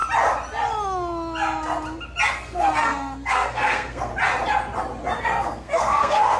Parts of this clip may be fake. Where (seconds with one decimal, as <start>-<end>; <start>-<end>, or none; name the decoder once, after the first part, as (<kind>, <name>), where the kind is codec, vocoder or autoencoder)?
2.3-4.1 (codec, SNAC); 5.2-6.4